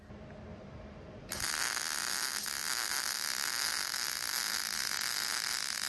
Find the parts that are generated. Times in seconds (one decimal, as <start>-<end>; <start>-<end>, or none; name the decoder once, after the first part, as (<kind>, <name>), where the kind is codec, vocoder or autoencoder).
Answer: 0.5-1.5 (vocoder, BigVGAN v2)